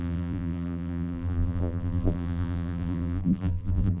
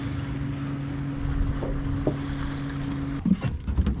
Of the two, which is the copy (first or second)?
first